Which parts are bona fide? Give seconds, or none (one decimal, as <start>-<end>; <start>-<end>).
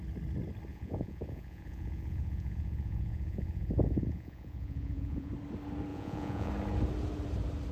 0.0-0.7; 5.3-5.9; 6.5-7.7